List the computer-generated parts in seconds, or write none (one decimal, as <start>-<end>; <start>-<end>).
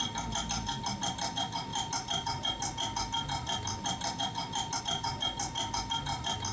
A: none